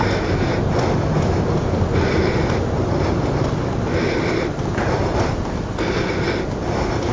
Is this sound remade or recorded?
recorded